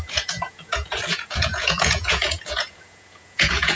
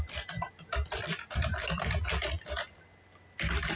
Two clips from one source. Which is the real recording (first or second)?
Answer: second